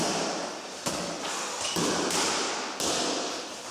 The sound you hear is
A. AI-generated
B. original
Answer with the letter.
B